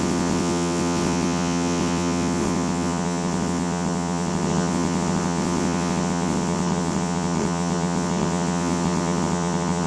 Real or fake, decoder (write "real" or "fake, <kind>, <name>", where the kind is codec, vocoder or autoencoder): fake, vocoder, WaveNeXt